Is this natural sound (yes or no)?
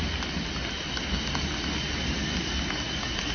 yes